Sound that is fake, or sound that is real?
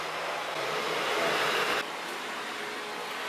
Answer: real